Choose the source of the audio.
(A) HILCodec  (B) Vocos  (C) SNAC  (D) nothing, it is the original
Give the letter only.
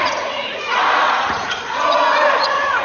B